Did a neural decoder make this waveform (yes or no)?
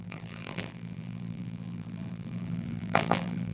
yes